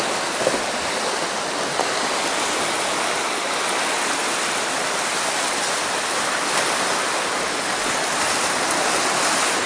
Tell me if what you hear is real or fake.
real